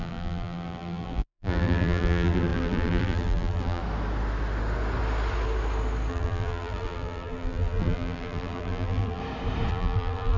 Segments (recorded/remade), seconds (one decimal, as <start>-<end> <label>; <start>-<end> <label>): 0.0-3.8 remade; 3.8-6.1 recorded; 6.1-9.2 remade; 9.2-9.7 recorded; 9.7-10.4 remade